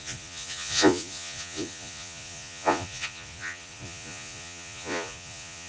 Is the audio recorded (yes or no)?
no